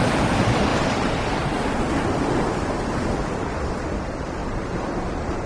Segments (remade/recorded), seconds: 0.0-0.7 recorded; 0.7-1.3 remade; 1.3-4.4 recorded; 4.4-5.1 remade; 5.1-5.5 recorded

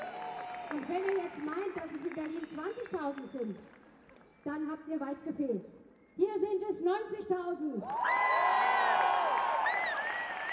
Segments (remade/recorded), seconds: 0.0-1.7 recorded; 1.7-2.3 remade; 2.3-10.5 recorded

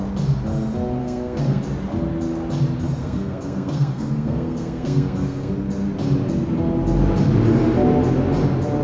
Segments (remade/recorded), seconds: 0.0-1.0 recorded; 1.0-1.6 remade; 1.6-3.0 recorded; 3.0-5.5 remade; 5.5-8.8 recorded

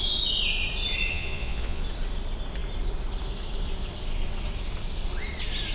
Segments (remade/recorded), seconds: 0.0-1.1 recorded; 1.1-1.8 remade; 1.8-5.7 recorded

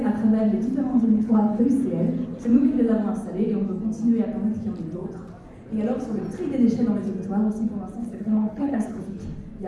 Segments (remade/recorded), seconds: 0.0-0.9 recorded; 0.9-1.6 remade; 1.6-8.0 recorded; 8.0-9.0 remade; 9.0-9.7 recorded

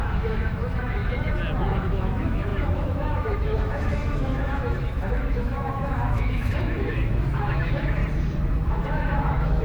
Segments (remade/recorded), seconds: 0.0-1.0 remade; 1.0-1.7 recorded; 1.7-8.0 remade; 8.0-8.7 recorded; 8.7-9.6 remade

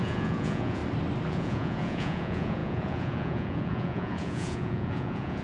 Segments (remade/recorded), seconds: 0.0-0.8 remade; 0.8-1.3 recorded; 1.3-5.4 remade